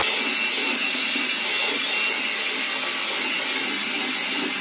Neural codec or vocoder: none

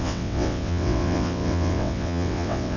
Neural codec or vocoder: vocoder, WaveNeXt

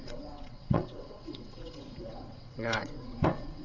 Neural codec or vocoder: vocoder, WaveNeXt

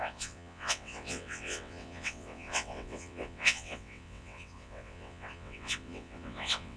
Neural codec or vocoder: vocoder, WaveNeXt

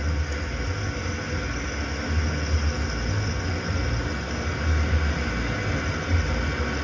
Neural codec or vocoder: none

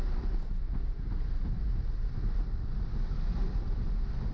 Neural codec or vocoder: none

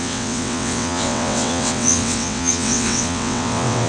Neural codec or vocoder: vocoder, WaveNeXt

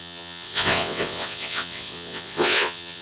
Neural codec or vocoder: vocoder, WaveNeXt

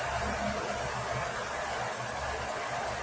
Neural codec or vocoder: none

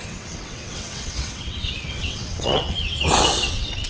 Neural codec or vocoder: vocoder, WaveNeXt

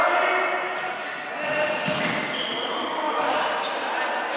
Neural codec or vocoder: none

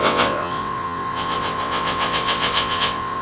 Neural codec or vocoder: vocoder, WaveNeXt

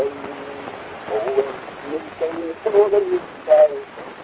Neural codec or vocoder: none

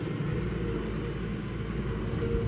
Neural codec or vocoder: none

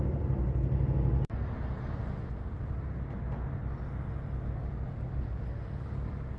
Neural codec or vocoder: none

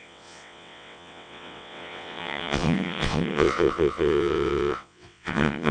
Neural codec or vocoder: vocoder, WaveNeXt